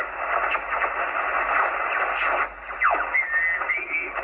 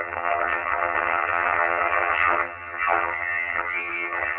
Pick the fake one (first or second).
second